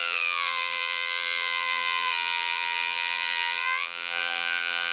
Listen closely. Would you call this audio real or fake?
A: fake